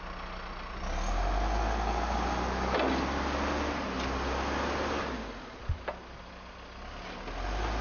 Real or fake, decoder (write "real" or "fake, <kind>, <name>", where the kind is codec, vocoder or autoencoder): real